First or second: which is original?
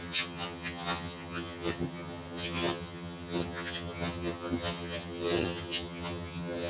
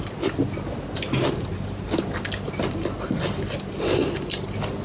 second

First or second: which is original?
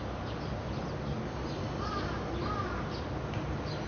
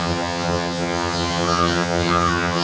first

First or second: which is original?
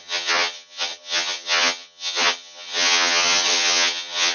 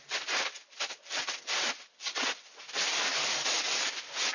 second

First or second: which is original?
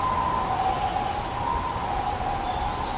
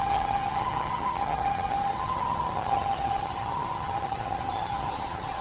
first